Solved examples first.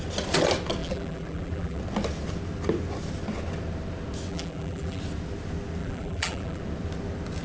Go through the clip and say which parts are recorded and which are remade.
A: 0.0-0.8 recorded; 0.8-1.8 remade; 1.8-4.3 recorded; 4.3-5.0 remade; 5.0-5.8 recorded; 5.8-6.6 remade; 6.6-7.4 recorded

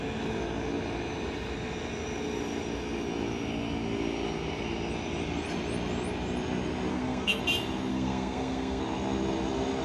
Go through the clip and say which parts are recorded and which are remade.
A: 0.0-6.9 recorded; 6.9-7.4 remade; 7.4-7.9 recorded; 7.9-8.8 remade; 8.8-9.8 recorded

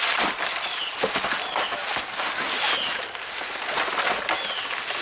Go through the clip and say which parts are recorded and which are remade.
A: 0.0-5.0 recorded

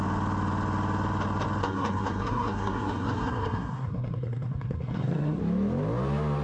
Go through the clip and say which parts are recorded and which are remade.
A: 0.0-1.6 recorded; 1.6-5.4 remade; 5.4-6.4 recorded

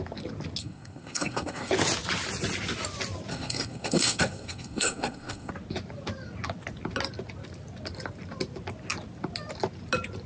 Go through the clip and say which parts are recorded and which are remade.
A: 0.0-0.6 recorded; 0.6-1.7 remade; 1.7-3.3 recorded; 3.3-5.5 remade; 5.5-10.3 recorded